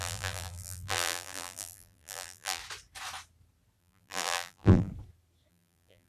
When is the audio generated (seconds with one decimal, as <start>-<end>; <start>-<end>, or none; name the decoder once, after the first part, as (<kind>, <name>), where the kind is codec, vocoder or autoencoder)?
0.0-2.6 (vocoder, BigVGAN v2); 3.8-4.9; 5.5-6.1

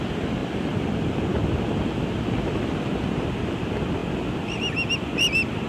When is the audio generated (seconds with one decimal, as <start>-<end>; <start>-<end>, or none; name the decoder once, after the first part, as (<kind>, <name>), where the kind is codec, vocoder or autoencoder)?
none

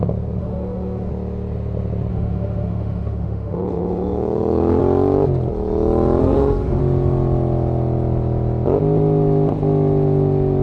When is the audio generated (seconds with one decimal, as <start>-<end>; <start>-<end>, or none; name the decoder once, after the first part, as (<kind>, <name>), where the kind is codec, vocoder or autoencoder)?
0.4-1.1 (autoencoder, DAC-VAE); 2.1-4.8; 6.2-6.8

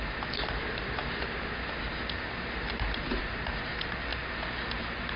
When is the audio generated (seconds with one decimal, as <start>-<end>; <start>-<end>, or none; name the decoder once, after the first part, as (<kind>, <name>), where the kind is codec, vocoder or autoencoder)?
none

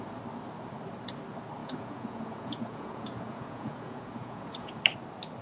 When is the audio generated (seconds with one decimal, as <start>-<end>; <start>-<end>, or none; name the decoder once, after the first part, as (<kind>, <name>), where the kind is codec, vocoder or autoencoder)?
1.6-4.8 (vocoder, Vocos)

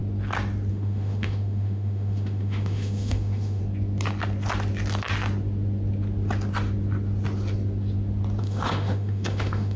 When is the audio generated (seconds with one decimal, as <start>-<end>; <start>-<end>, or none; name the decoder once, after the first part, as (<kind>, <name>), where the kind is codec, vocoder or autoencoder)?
0.7-3.6 (autoencoder, DAC-VAE); 8.4-9.8